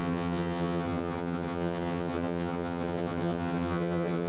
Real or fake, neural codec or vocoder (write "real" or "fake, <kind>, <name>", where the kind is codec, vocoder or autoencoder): fake, vocoder, HiFi-GAN